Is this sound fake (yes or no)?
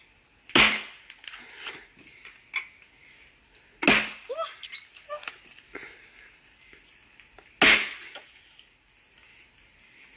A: no